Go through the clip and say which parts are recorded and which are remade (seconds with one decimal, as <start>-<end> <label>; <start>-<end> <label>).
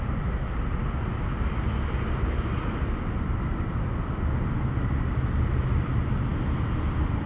0.0-7.3 recorded